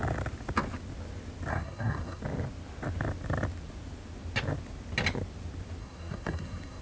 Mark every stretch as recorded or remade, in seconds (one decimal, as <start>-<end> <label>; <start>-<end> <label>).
0.0-1.5 recorded; 1.5-2.2 remade; 2.2-5.8 recorded; 5.8-6.8 remade